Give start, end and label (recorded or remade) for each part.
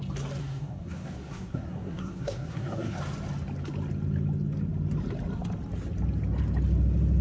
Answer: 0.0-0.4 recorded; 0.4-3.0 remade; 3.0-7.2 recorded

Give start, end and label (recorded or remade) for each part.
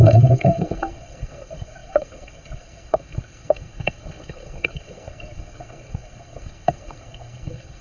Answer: 0.0-7.8 remade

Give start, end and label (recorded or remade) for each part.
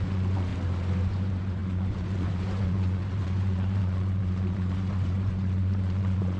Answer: 0.0-0.5 remade; 0.5-1.1 recorded; 1.1-6.4 remade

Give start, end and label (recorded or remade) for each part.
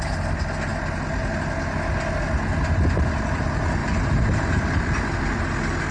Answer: 0.0-3.8 recorded; 3.8-5.4 remade; 5.4-5.9 recorded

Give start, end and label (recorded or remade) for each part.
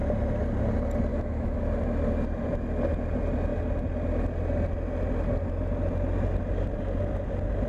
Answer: 0.0-1.1 recorded; 1.1-1.6 remade; 1.6-7.7 recorded